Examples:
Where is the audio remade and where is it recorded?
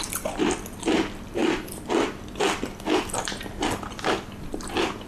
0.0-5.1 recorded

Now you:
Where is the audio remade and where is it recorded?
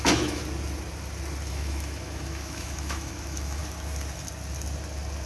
0.0-0.4 remade; 0.4-1.5 recorded; 1.5-3.6 remade; 3.6-5.3 recorded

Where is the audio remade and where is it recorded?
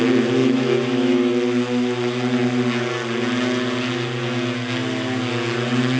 0.0-0.4 recorded; 0.4-1.3 remade; 1.3-6.0 recorded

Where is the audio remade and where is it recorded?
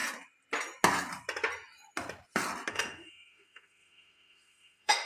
0.0-2.7 recorded; 2.7-5.1 remade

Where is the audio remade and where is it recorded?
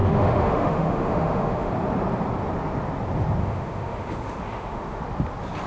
0.0-1.7 remade; 1.7-3.4 recorded; 3.4-5.0 remade; 5.0-5.7 recorded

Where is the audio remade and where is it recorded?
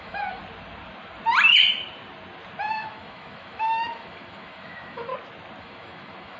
0.0-0.4 remade; 0.4-2.7 recorded; 2.7-5.1 remade; 5.1-5.6 recorded; 5.6-6.4 remade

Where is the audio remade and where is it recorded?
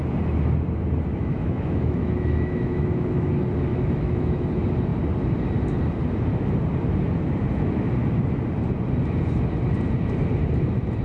0.0-1.1 recorded; 1.1-3.3 remade; 3.3-3.7 recorded; 3.7-4.4 remade; 4.4-11.0 recorded